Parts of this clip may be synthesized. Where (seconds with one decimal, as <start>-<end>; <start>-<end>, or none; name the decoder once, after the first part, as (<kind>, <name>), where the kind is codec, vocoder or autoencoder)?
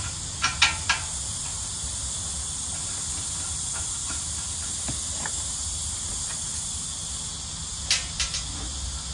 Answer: 4.0-5.9 (vocoder, BigVGAN v2)